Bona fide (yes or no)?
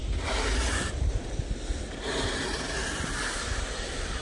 yes